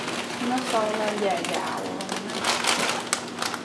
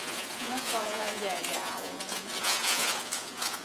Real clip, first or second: first